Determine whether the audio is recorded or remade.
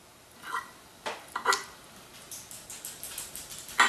recorded